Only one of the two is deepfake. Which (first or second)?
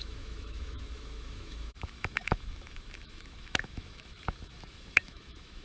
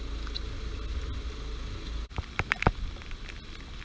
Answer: first